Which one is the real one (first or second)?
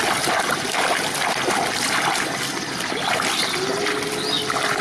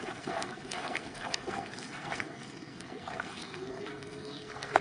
first